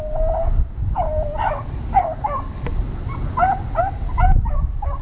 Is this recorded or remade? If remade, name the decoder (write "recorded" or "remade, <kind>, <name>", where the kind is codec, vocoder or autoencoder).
recorded